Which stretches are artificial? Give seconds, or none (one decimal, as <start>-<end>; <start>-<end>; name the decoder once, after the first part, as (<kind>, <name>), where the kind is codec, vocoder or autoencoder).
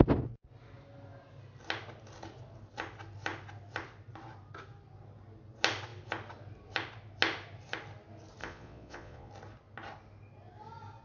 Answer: 8.4-9.3 (vocoder, Vocos)